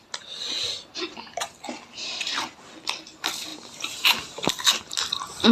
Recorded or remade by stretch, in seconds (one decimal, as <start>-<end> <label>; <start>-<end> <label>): 0.0-5.5 recorded